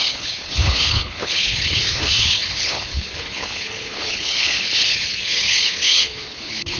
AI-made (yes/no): yes